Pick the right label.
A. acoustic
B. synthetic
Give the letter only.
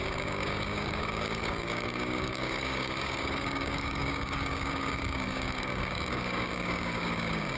B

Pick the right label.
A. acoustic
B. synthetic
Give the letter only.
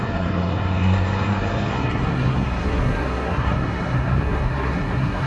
B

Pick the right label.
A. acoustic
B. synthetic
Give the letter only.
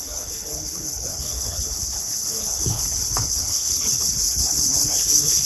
B